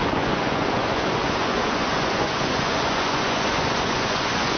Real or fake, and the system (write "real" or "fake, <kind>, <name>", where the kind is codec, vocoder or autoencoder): fake, vocoder, Vocos